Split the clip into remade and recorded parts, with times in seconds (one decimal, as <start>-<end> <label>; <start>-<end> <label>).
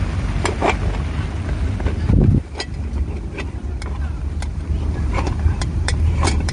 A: 0.0-0.6 remade; 0.6-4.5 recorded; 4.5-6.5 remade